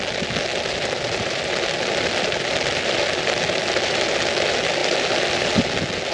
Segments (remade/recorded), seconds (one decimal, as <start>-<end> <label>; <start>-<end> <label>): 0.0-0.5 recorded; 0.5-4.2 remade; 4.2-4.8 recorded; 4.8-5.6 remade; 5.6-6.1 recorded